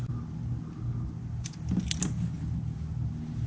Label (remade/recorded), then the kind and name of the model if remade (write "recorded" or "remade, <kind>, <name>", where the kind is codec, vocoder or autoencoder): recorded